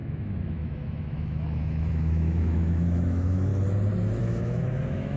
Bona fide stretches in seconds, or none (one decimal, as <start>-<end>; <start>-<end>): 3.5-4.2